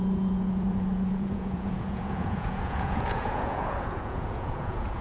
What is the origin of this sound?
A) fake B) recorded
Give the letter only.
A